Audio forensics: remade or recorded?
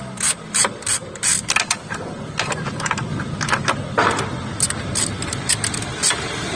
recorded